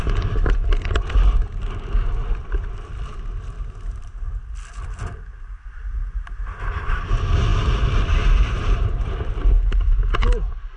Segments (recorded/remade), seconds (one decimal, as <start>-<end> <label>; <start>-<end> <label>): 0.0-3.1 recorded; 3.1-4.4 remade; 4.4-7.5 recorded; 7.5-9.3 remade; 9.3-10.8 recorded